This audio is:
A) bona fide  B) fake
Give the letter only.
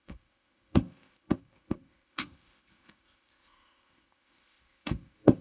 B